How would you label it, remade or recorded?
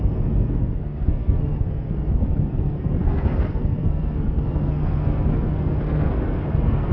remade